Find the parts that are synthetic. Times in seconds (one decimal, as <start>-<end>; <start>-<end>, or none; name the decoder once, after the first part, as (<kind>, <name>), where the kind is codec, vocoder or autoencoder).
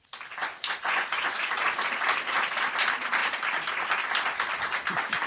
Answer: 0.4-1.5 (vocoder, Vocos)